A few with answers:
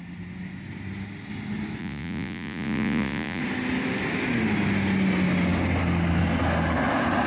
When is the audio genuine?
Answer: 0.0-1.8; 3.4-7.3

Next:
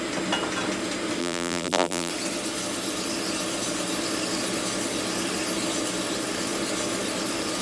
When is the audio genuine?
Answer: 0.0-1.2; 2.1-7.6

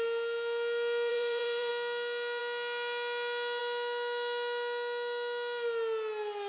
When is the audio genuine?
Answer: 0.0-1.1; 1.7-6.5

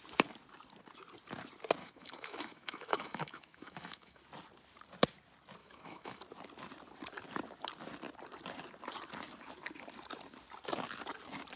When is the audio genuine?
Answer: 0.0-1.8; 4.2-5.6; 6.2-11.6

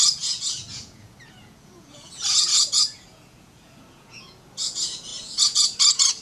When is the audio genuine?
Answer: none

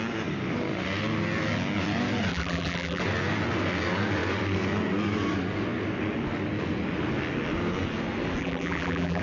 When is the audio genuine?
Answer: 0.0-2.3; 3.0-8.4

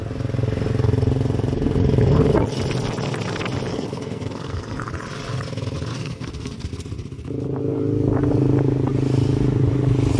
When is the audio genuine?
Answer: 0.0-3.7; 4.9-5.9; 6.7-10.2

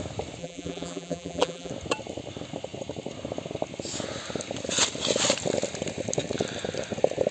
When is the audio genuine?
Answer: 0.0-0.4; 1.7-7.3